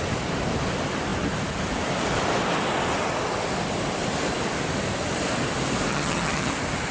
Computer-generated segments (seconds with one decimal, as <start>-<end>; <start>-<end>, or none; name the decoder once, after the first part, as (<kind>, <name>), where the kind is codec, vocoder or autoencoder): 5.9-6.5 (vocoder, HiFi-GAN)

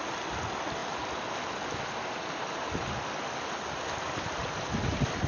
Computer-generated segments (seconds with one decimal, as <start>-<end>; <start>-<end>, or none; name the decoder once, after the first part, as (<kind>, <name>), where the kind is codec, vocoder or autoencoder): none